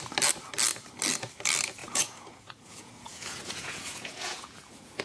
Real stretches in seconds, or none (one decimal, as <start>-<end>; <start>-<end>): 0.0-1.8